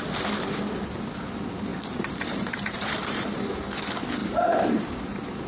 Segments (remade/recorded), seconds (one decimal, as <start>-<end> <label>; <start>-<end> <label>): 0.0-1.7 recorded; 1.7-3.8 remade; 3.8-4.2 recorded; 4.2-4.8 remade; 4.8-5.5 recorded